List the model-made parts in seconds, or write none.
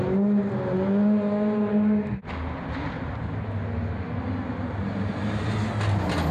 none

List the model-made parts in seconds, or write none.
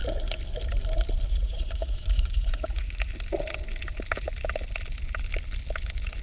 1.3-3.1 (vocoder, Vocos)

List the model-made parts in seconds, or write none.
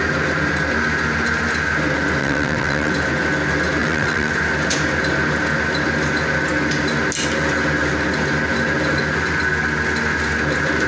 2.2-2.9 (vocoder, WaveNeXt); 3.8-4.3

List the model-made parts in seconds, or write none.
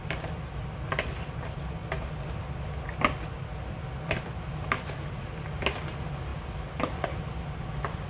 none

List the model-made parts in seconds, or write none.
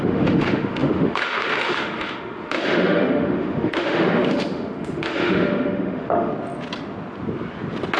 0.0-6.3 (autoencoder, DAC-VAE)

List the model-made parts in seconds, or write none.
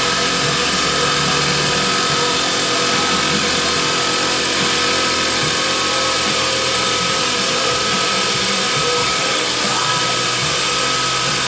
9.0-9.9 (codec, DAC)